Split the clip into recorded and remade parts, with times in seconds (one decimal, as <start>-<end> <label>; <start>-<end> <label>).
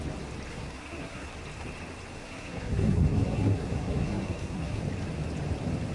0.0-0.5 recorded; 0.5-1.3 remade; 1.3-2.2 recorded; 2.2-4.8 remade; 4.8-5.9 recorded